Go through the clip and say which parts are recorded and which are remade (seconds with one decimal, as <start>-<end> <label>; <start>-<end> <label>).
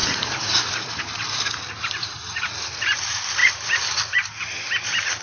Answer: 0.0-1.0 remade; 1.0-2.0 recorded; 2.0-2.6 remade; 2.6-5.2 recorded